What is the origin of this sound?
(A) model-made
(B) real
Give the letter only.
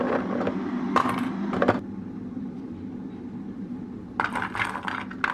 B